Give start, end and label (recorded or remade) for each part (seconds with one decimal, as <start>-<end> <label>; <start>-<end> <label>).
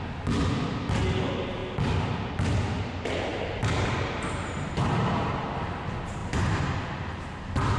0.0-3.3 recorded; 3.3-5.8 remade; 5.8-6.2 recorded; 6.2-6.8 remade; 6.8-7.8 recorded